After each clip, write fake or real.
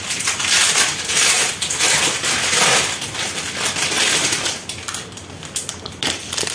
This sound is real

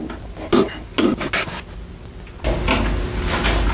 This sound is real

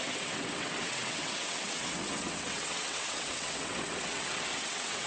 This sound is fake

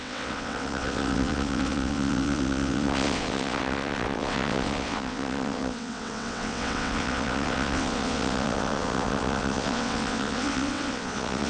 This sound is fake